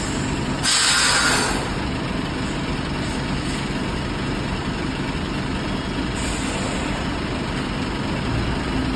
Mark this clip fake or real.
real